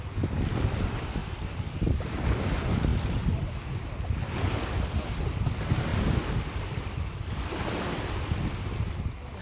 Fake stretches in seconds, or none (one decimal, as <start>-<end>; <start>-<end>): 1.2-2.1; 2.9-3.6; 5.9-8.5